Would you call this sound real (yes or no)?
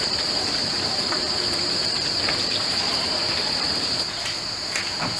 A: no